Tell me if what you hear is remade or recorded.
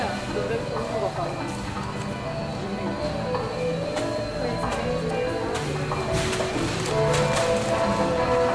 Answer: recorded